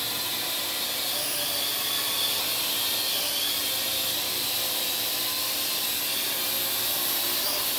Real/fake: real